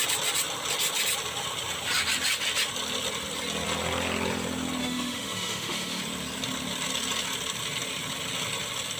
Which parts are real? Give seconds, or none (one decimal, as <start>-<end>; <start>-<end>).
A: 0.0-4.8; 6.0-9.0